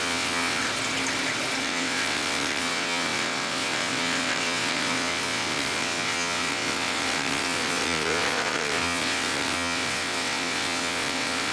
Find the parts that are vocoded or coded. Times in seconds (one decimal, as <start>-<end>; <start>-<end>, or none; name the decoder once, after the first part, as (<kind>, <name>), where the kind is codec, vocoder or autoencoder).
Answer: 0.0-0.6 (vocoder, WaveNeXt); 1.6-11.5